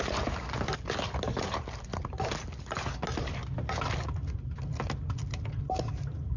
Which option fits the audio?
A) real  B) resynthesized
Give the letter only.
A